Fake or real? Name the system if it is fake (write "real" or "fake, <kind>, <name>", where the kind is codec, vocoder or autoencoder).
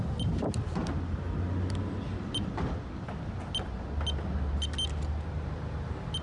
real